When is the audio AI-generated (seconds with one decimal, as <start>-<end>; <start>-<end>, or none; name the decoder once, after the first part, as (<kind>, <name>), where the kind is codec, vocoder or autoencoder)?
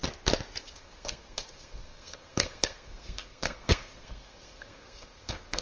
0.6-5.6 (codec, SNAC)